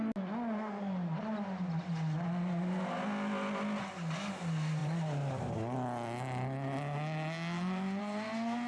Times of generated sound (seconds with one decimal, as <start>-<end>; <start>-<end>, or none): none